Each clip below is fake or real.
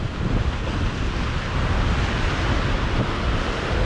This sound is real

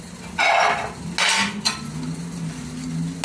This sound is real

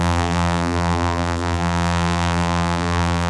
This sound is fake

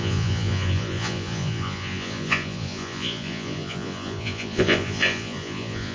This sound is fake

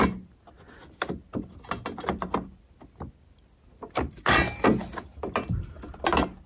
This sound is real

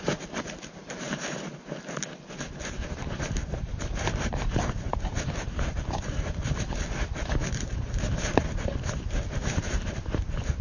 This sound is fake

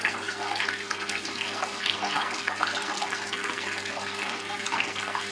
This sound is fake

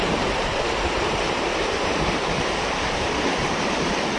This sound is fake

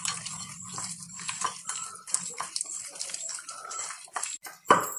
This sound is fake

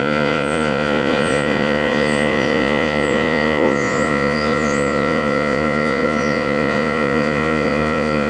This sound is fake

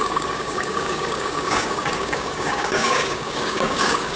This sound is fake